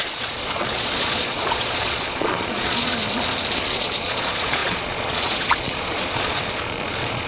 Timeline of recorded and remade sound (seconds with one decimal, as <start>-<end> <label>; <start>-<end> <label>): 0.0-2.9 remade; 2.9-3.7 recorded; 3.7-7.3 remade